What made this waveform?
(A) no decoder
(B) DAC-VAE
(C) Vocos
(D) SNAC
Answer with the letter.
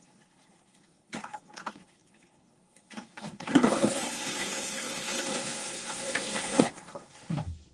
D